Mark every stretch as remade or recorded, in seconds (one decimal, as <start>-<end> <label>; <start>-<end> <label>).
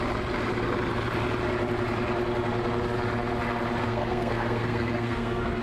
0.0-3.8 recorded; 3.8-5.6 remade